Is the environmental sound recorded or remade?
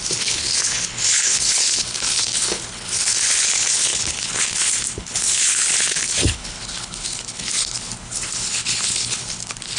remade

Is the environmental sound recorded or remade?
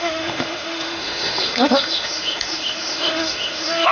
remade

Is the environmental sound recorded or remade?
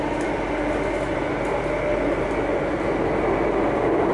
recorded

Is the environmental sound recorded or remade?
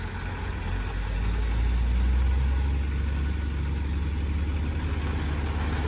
recorded